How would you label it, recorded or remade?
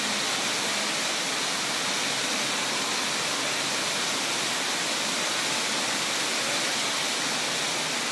recorded